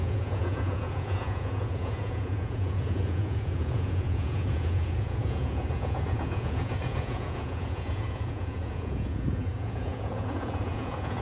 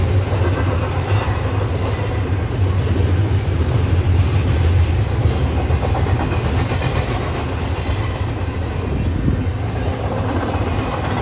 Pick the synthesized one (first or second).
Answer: first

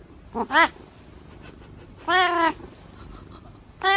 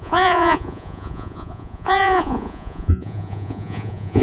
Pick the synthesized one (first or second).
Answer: second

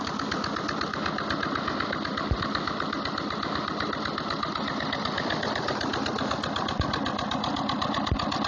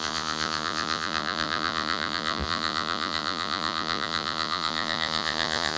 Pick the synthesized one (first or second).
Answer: second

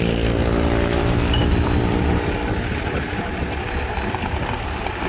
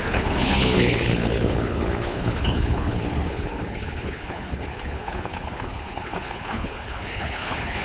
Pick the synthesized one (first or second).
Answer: second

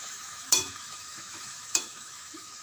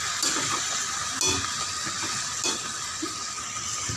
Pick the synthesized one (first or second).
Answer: first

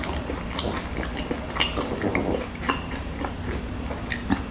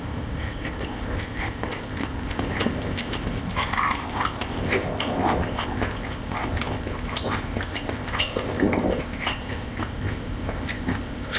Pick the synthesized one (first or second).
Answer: second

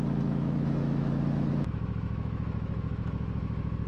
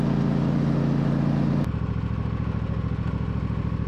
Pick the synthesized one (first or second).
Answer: first